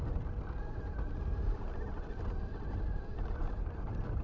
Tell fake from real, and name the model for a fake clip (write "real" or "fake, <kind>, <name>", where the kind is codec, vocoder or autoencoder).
real